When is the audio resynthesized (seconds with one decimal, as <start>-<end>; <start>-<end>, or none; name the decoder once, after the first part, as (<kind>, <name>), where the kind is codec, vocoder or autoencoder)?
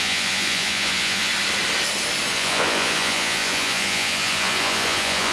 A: 0.0-1.3 (vocoder, Vocos); 2.3-5.3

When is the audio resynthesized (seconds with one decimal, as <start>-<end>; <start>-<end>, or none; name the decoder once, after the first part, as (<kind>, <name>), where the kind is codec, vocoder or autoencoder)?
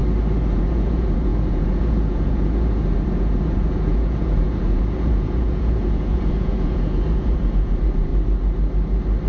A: 0.5-8.1 (vocoder, Vocos)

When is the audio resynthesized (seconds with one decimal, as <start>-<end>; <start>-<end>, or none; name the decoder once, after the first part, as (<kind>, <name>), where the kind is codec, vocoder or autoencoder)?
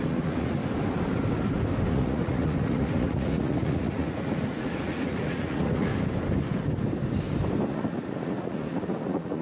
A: 0.0-0.6 (vocoder, Vocos); 1.9-5.9; 7.7-9.4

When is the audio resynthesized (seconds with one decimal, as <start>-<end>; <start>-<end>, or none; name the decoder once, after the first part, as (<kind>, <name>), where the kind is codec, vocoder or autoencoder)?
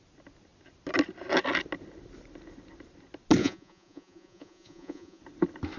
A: 3.4-5.2 (vocoder, Vocos)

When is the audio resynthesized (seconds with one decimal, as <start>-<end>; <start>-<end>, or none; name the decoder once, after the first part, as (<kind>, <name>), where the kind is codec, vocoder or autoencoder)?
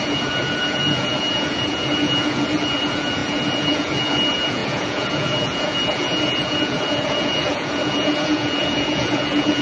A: 0.0-9.6 (vocoder, Vocos)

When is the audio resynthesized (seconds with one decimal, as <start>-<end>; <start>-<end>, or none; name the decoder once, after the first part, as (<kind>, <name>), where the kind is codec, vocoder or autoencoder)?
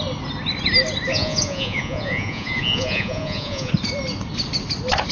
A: 1.1-3.7 (vocoder, Vocos)